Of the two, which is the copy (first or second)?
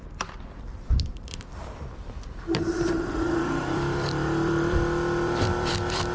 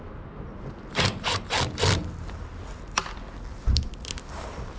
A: first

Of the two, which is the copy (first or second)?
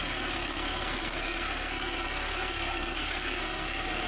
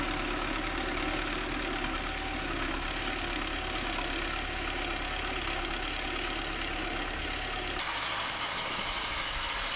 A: first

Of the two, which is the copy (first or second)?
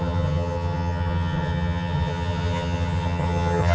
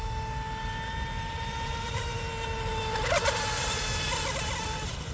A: first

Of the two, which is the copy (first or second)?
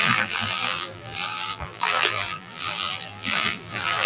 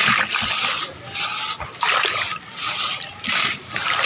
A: first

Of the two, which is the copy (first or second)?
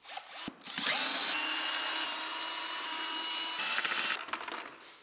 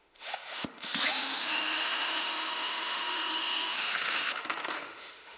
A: second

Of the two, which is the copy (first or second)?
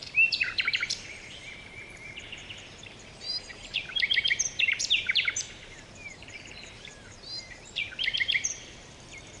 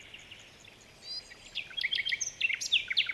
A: first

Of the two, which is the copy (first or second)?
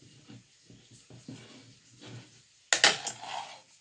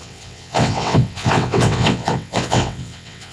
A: second